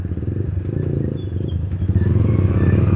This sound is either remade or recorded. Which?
recorded